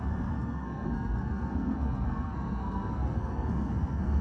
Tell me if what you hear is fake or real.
fake